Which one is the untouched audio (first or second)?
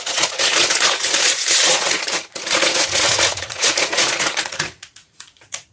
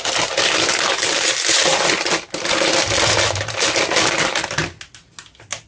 second